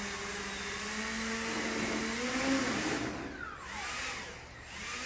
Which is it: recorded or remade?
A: recorded